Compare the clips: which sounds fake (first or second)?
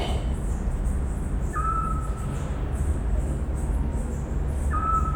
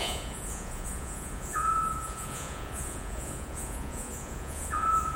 second